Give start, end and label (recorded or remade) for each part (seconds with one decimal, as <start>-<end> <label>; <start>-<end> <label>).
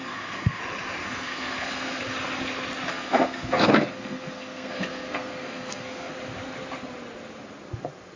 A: 0.0-0.6 remade; 0.6-1.0 recorded; 1.0-2.0 remade; 2.0-2.9 recorded; 2.9-6.1 remade; 6.1-8.2 recorded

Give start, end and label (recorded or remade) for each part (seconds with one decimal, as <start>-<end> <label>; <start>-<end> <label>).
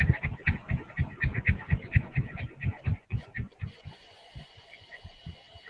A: 0.0-1.8 recorded; 1.8-5.2 remade; 5.2-5.7 recorded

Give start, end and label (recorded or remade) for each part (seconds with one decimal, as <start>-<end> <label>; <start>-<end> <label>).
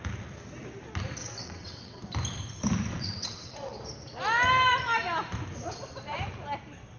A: 0.0-1.2 recorded; 1.2-2.0 remade; 2.0-2.9 recorded; 2.9-3.7 remade; 3.7-7.0 recorded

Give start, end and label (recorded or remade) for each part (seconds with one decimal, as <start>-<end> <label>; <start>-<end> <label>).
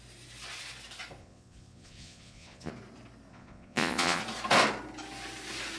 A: 0.0-1.2 recorded; 1.2-2.7 remade; 2.7-3.3 recorded; 3.3-4.2 remade; 4.2-5.8 recorded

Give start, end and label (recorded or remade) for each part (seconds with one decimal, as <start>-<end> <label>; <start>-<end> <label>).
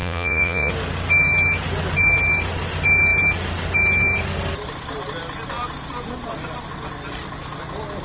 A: 0.0-0.7 remade; 0.7-8.0 recorded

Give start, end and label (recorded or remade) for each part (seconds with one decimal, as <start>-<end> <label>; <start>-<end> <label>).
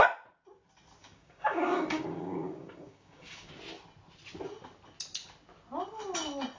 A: 0.0-1.0 recorded; 1.0-3.5 remade; 3.5-6.6 recorded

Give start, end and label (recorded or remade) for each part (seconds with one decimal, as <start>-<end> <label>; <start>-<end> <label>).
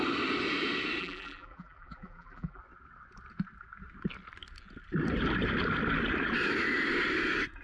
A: 0.0-1.0 recorded; 1.0-2.6 remade; 2.6-7.6 recorded